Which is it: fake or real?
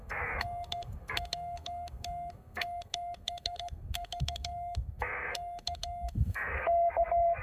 fake